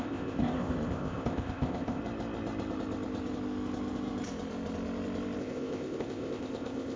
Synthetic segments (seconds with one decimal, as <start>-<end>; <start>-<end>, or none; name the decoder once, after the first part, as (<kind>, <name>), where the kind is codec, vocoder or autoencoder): 0.0-2.0 (codec, ZipCodec); 5.4-7.0